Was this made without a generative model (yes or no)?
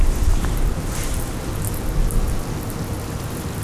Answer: yes